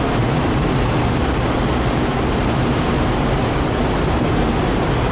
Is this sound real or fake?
real